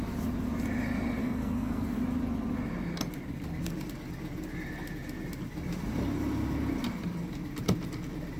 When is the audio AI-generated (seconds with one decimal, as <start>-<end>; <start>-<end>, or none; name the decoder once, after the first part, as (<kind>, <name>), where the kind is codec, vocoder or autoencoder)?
1.2-2.0 (codec, SNAC)